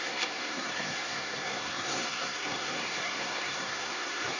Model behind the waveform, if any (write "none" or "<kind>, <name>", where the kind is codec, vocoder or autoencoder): codec, SNAC